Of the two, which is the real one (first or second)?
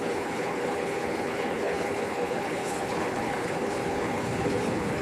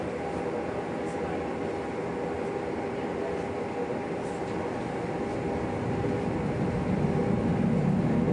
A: second